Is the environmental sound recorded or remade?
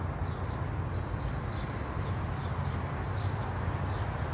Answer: recorded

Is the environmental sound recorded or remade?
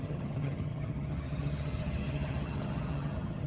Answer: remade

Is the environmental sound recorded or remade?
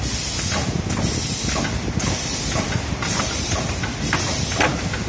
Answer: recorded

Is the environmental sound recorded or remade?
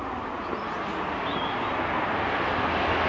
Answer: recorded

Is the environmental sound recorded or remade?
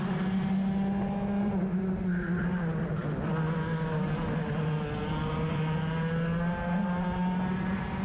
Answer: recorded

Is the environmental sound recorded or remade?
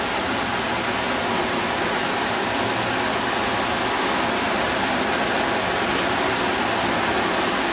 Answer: recorded